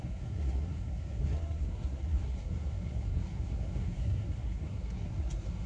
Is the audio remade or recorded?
remade